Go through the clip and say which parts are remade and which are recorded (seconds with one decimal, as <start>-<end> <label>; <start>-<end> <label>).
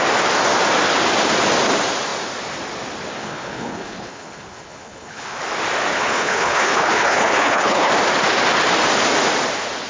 0.0-3.2 recorded; 3.2-5.4 remade; 5.4-5.9 recorded; 5.9-7.9 remade; 7.9-9.9 recorded